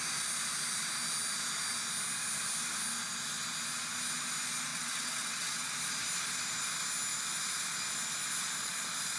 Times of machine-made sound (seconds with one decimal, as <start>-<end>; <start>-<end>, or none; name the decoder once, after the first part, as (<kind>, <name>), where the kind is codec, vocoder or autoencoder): 4.7-5.7 (vocoder, WaveNeXt)